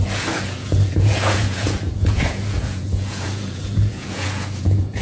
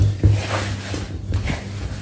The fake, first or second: first